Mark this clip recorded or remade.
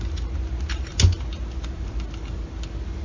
recorded